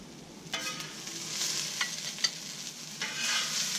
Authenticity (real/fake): real